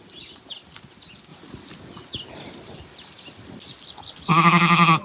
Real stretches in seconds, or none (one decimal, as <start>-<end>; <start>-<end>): 0.0-5.0